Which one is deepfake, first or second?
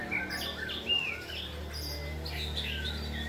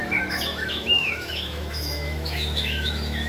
second